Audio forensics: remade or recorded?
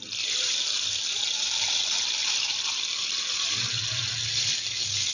recorded